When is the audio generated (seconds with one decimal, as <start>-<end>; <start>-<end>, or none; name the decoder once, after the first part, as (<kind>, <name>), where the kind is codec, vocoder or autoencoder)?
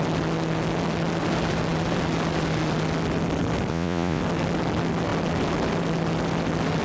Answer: 3.7-4.2 (vocoder, Vocos)